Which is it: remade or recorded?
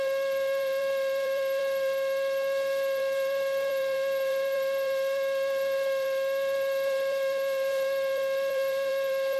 remade